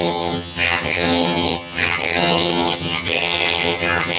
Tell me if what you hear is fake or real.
fake